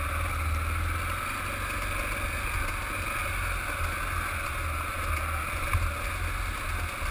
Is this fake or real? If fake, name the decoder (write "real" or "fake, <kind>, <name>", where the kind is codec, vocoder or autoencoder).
real